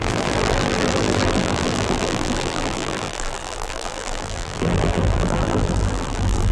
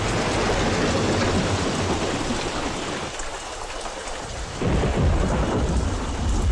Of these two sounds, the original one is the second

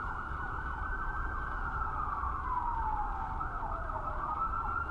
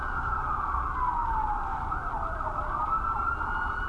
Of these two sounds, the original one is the second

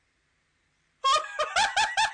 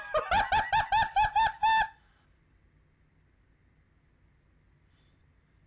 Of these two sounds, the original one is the second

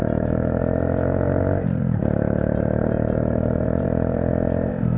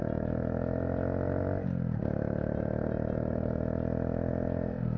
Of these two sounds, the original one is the second